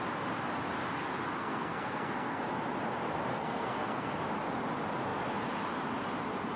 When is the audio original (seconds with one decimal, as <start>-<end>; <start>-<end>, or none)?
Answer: 0.0-1.4; 2.4-3.3; 4.2-6.6

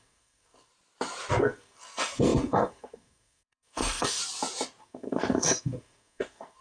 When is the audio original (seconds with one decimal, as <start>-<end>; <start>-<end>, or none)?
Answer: 0.7-1.4; 4.2-4.8

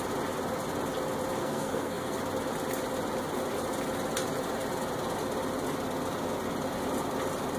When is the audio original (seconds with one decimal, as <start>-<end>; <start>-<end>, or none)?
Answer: 0.0-1.4; 2.2-7.6

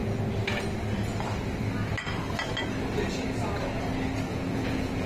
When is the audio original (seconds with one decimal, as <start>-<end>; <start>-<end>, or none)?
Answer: 0.0-4.3

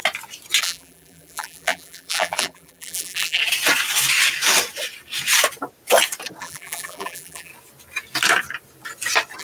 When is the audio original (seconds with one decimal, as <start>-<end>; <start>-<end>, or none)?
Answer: 0.0-0.6; 3.4-6.4; 7.5-9.4

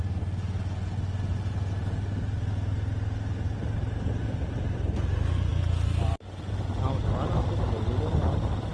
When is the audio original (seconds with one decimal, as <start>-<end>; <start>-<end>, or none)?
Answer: 0.0-8.7

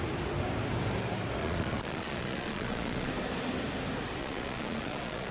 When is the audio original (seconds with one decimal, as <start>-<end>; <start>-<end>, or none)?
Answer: 0.0-1.4; 3.1-4.2

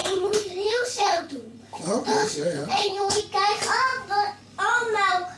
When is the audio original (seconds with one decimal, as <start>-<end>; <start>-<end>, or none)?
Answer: 3.2-5.4